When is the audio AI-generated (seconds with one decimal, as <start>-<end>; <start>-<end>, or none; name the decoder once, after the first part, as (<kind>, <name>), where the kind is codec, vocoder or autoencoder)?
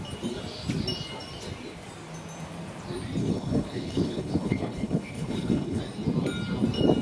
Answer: 3.2-5.8 (codec, HILCodec)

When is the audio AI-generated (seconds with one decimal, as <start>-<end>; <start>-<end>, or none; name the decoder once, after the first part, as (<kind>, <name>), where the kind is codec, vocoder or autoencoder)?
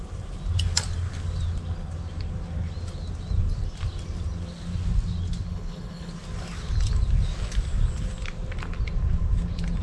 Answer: 5.5-6.1 (codec, HILCodec)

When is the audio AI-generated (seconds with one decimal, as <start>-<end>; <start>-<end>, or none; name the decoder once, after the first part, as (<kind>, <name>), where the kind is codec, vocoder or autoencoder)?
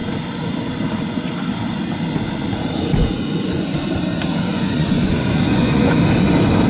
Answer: 3.0-3.9 (vocoder, Vocos); 4.5-6.0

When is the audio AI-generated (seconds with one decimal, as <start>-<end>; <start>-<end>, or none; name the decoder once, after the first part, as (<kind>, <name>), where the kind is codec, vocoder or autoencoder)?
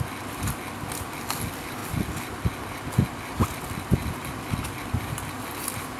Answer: none